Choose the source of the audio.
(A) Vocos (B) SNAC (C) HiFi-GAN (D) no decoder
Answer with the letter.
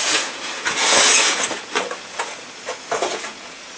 A